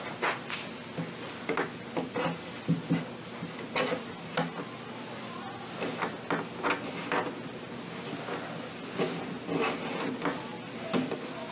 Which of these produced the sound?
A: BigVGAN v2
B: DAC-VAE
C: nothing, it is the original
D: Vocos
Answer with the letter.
C